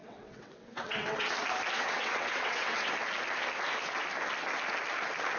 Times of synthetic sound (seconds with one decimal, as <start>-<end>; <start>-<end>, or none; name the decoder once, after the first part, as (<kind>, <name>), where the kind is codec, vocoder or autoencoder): 0.0-1.3 (vocoder, WaveNeXt); 1.8-2.9